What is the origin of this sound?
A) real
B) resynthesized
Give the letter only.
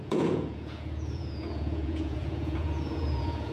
B